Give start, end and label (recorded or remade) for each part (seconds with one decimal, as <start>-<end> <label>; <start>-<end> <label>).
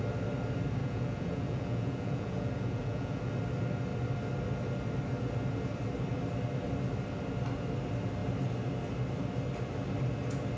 0.0-0.8 recorded; 0.8-3.3 remade; 3.3-10.6 recorded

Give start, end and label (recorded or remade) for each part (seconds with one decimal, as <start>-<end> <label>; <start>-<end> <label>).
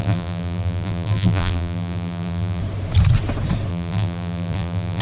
0.0-2.6 remade; 2.6-3.7 recorded; 3.7-5.0 remade